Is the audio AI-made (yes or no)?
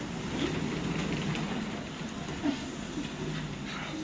no